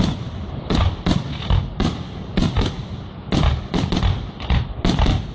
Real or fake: real